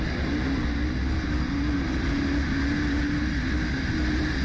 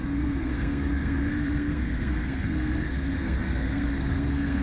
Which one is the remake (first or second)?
second